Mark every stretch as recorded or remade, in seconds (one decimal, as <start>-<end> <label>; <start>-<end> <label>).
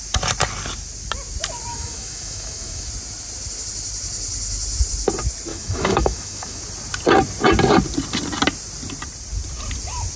0.0-1.7 recorded; 1.7-2.9 remade; 2.9-5.5 recorded; 5.5-6.6 remade; 6.6-10.2 recorded